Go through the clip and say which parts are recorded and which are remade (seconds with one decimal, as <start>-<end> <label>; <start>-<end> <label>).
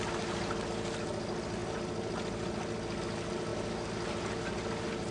0.0-5.1 recorded